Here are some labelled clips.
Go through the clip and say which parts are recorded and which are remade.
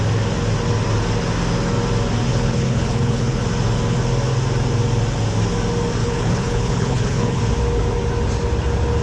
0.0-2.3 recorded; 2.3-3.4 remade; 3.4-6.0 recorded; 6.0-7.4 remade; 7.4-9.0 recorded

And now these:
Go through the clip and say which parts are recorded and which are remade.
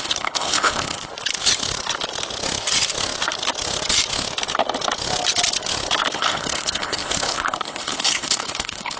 0.0-1.1 remade; 1.1-6.1 recorded; 6.1-9.0 remade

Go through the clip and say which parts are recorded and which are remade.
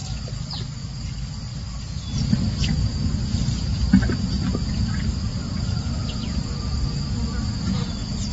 0.0-0.6 remade; 0.6-5.3 recorded; 5.3-5.9 remade; 5.9-8.3 recorded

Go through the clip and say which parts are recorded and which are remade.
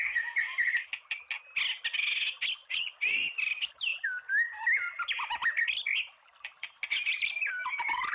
0.0-2.6 recorded; 2.6-3.3 remade; 3.3-8.1 recorded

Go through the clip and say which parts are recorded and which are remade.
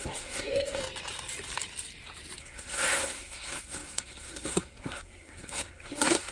0.0-0.8 remade; 0.8-2.4 recorded; 2.4-6.3 remade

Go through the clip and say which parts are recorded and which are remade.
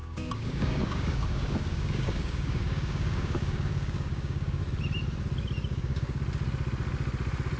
0.0-4.6 remade; 4.6-5.7 recorded; 5.7-6.2 remade; 6.2-7.6 recorded